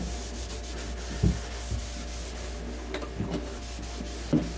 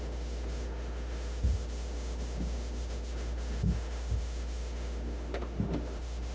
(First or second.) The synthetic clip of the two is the second